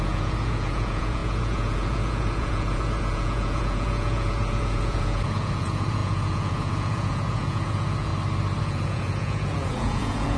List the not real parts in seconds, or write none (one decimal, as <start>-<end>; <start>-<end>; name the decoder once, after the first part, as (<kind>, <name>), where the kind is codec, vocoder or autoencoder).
0.0-8.1 (vocoder, Vocos); 8.6-10.4